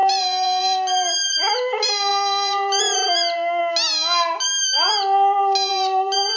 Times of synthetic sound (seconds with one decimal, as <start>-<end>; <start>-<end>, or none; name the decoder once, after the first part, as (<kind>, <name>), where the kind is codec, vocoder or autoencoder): 0.0-3.6 (vocoder, BigVGAN v2); 5.7-6.4